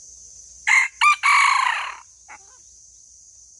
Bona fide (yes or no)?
yes